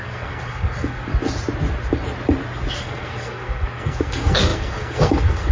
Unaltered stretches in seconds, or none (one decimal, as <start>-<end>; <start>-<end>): 1.1-2.7